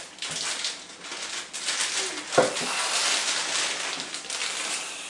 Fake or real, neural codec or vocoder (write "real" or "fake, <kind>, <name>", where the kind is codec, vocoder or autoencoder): real